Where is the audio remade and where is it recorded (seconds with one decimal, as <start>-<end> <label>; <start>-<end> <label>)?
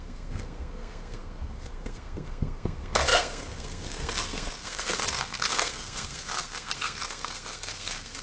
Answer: 0.0-8.2 remade